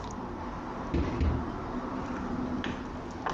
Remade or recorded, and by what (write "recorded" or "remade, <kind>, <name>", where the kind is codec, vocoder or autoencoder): recorded